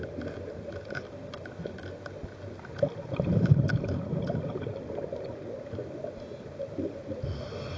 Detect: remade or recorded recorded